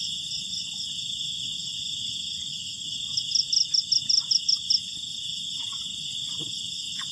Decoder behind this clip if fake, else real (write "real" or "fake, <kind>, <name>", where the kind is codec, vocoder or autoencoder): real